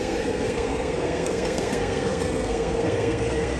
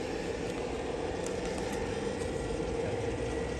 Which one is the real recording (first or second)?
second